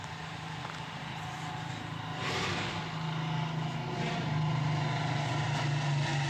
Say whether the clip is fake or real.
real